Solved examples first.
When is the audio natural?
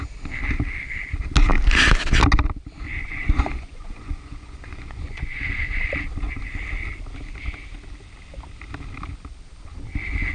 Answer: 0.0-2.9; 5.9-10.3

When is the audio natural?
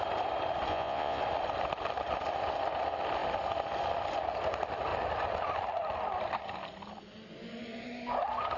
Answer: 0.0-0.7; 1.2-8.6